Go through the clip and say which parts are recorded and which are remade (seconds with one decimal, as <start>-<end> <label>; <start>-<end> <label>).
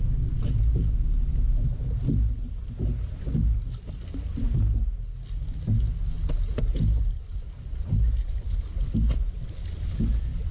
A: 0.0-10.5 recorded